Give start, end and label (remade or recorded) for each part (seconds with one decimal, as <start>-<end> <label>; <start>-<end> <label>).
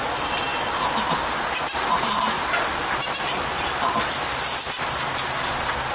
0.0-5.9 recorded